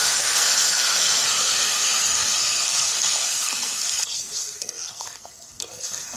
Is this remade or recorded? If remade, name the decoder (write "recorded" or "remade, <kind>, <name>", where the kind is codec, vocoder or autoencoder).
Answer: remade, codec, SNAC